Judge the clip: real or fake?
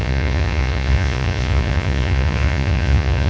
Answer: fake